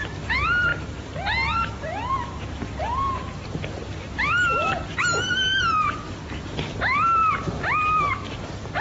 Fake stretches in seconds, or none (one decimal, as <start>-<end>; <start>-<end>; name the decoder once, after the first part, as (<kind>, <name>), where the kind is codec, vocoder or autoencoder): 0.7-2.1 (vocoder, BigVGAN v2); 5.5-6.1